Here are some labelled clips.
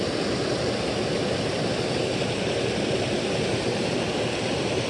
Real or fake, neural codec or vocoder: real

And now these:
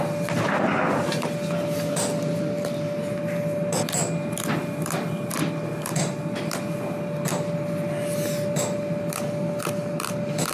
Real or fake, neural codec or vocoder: real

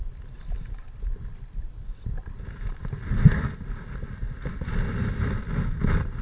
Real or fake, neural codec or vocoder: real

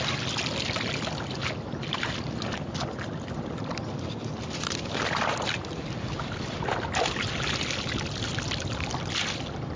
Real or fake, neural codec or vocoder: real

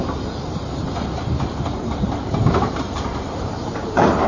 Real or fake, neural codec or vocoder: fake, vocoder, BigVGAN v2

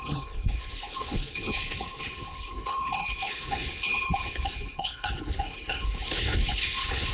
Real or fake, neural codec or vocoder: fake, codec, HILCodec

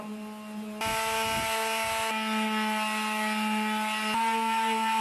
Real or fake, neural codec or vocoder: real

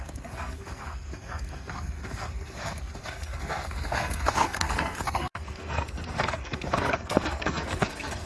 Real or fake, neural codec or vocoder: fake, codec, SNAC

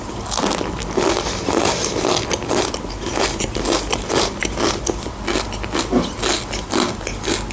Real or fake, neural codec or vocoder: real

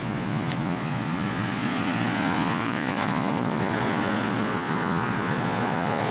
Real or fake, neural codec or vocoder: fake, vocoder, Vocos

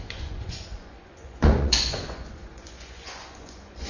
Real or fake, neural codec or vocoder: fake, vocoder, Vocos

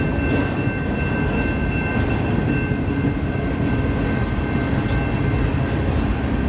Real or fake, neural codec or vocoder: real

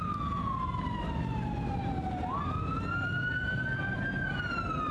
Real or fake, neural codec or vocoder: real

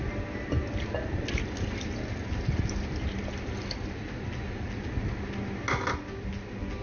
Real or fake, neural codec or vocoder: real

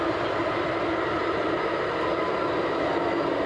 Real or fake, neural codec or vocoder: real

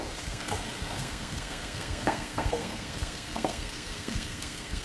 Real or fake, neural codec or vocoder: fake, codec, SNAC